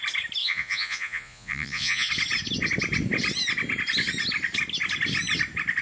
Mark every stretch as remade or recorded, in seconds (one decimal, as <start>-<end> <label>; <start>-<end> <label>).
0.0-0.4 recorded; 0.4-2.1 remade; 2.1-5.8 recorded

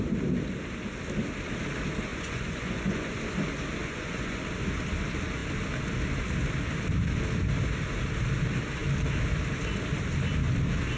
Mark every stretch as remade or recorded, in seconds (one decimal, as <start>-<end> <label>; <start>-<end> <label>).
0.0-2.1 recorded; 2.1-3.2 remade; 3.2-3.8 recorded; 3.8-4.4 remade; 4.4-11.0 recorded

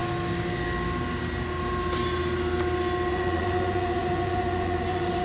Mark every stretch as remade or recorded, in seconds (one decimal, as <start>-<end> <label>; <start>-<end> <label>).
0.0-3.1 recorded; 3.1-5.2 remade